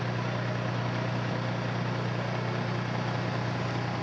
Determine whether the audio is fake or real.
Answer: real